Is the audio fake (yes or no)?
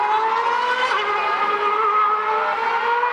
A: no